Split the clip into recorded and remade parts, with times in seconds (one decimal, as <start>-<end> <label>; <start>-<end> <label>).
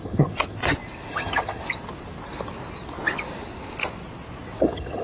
0.0-0.6 remade; 0.6-1.1 recorded; 1.1-1.6 remade; 1.6-4.6 recorded; 4.6-5.0 remade